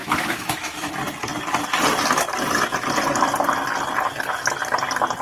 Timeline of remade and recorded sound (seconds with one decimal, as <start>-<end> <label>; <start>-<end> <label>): 0.0-0.9 remade; 0.9-5.2 recorded